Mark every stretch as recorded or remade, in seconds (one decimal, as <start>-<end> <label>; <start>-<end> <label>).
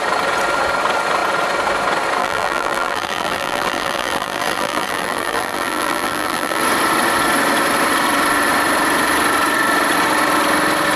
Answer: 0.0-2.2 recorded; 2.2-6.6 remade; 6.6-11.0 recorded